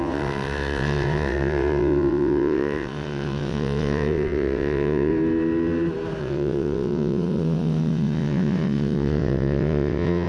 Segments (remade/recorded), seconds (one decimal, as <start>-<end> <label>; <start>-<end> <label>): 0.0-5.1 remade; 5.1-6.2 recorded; 6.2-10.3 remade